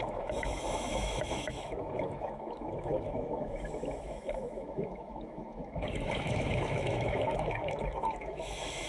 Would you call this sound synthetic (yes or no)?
yes